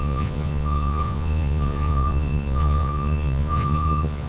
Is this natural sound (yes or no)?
no